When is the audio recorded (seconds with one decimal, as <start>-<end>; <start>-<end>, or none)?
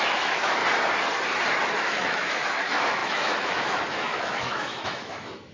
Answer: 0.6-1.8